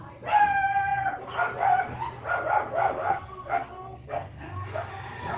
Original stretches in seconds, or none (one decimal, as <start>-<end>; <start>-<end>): 0.0-3.0; 4.9-5.4

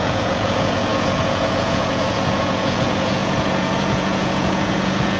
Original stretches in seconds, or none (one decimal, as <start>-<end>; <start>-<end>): none

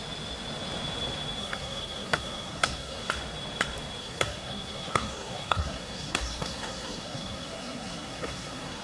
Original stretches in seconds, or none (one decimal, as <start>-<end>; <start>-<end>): 0.0-1.4; 3.1-4.0

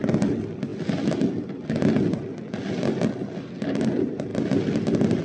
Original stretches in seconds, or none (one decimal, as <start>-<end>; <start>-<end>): 0.0-5.2

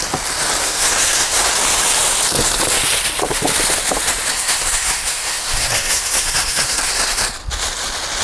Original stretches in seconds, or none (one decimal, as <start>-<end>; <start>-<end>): 0.0-0.6; 1.5-4.3; 6.9-8.2

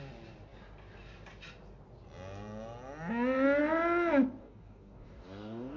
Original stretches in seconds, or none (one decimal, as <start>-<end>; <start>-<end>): 0.0-4.4

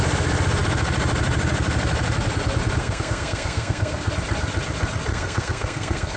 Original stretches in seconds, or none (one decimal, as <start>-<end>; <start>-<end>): 0.0-2.8; 4.1-5.1